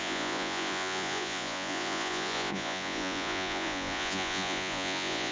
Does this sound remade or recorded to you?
remade